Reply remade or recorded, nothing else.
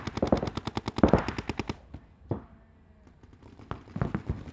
recorded